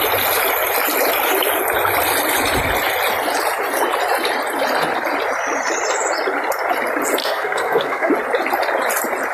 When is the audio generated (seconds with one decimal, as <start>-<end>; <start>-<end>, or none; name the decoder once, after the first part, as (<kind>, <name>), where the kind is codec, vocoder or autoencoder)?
7.2-8.1 (codec, SNAC)